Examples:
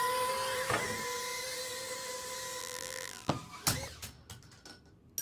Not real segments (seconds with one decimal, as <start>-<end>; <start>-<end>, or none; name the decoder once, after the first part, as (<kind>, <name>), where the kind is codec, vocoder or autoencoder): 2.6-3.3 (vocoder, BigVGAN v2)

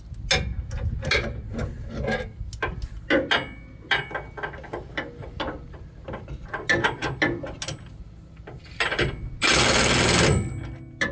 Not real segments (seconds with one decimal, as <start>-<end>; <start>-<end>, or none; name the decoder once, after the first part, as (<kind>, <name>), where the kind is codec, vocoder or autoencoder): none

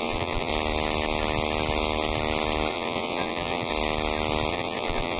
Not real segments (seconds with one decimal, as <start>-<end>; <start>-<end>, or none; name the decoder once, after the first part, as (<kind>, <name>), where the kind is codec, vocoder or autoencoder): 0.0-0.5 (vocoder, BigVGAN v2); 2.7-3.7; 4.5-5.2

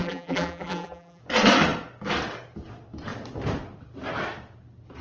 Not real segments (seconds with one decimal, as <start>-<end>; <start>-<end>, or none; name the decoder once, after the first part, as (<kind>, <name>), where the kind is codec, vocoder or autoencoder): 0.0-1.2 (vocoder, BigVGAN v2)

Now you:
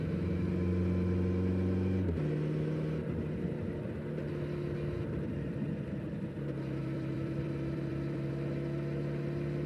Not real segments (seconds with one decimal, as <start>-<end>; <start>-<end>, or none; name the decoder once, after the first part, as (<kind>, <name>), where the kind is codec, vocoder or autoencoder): 6.8-8.3 (vocoder, BigVGAN v2)